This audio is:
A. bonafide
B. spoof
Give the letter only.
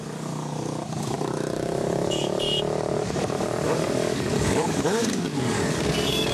B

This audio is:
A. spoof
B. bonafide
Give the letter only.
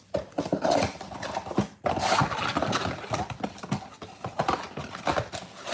B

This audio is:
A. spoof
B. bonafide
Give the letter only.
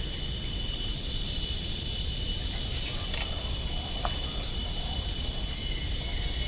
B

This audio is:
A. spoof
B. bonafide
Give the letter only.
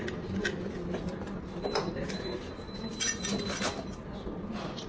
B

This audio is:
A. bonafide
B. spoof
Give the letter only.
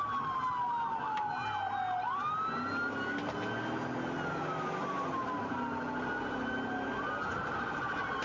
A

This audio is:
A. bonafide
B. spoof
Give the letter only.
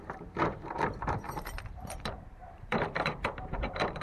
B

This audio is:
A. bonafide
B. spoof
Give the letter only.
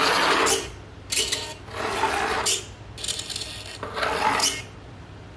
A